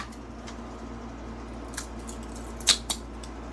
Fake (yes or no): no